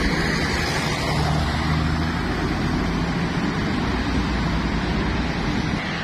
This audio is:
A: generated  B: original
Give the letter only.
B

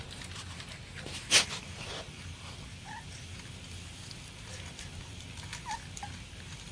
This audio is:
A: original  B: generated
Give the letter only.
A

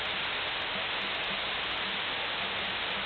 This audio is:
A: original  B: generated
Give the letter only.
A